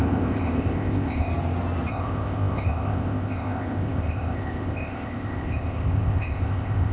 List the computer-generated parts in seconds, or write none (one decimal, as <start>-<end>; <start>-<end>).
0.0-1.3; 1.9-6.9